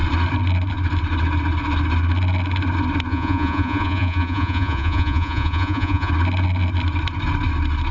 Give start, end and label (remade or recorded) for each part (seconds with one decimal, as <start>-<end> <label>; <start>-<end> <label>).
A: 0.0-3.1 recorded; 3.1-6.1 remade; 6.1-7.9 recorded

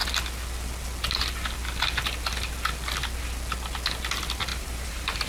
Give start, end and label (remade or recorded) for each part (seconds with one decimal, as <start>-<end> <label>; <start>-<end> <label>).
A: 0.0-4.5 recorded; 4.5-5.3 remade